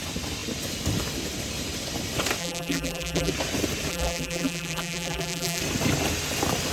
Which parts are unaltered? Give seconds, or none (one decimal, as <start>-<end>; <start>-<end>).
0.0-2.4; 3.3-3.9; 5.6-6.7